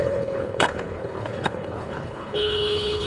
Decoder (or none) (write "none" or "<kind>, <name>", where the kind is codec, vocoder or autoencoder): codec, HILCodec